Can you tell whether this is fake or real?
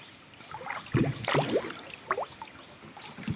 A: real